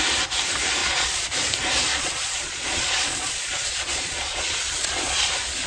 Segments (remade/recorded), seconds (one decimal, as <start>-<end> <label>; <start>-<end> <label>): 0.0-0.8 recorded; 0.8-1.3 remade; 1.3-1.9 recorded; 1.9-5.3 remade; 5.3-5.7 recorded